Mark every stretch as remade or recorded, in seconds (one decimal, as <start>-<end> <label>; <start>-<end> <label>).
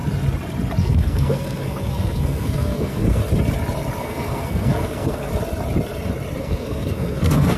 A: 0.0-0.8 recorded; 0.8-3.2 remade; 3.2-4.0 recorded; 4.0-5.3 remade; 5.3-6.4 recorded; 6.4-7.6 remade